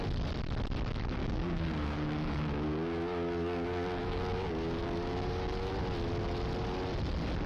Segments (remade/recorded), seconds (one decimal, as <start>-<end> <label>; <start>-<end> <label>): 0.0-1.2 recorded; 1.2-5.7 remade; 5.7-7.5 recorded